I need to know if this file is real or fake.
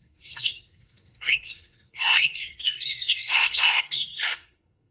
fake